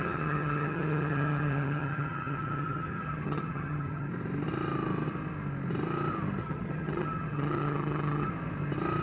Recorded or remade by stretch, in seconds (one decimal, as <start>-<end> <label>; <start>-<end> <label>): 0.0-4.1 remade; 4.1-6.4 recorded; 6.4-8.3 remade; 8.3-9.0 recorded

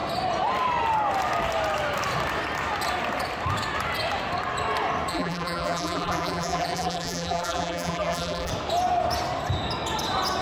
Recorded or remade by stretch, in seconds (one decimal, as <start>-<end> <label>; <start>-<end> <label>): 0.0-5.1 recorded; 5.1-8.5 remade; 8.5-10.4 recorded

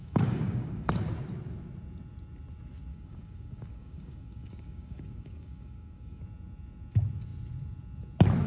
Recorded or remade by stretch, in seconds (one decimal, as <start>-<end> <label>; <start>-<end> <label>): 0.0-0.9 remade; 0.9-2.9 recorded; 2.9-6.2 remade; 6.2-8.5 recorded